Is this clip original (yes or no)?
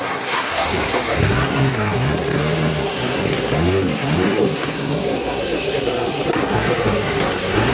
no